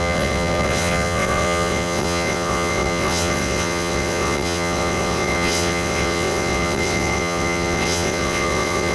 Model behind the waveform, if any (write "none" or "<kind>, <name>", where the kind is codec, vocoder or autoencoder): vocoder, WaveNeXt